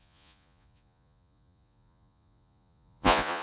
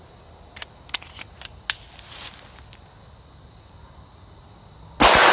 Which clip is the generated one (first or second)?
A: first